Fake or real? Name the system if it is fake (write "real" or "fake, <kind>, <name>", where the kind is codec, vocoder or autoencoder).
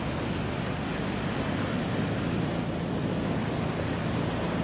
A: real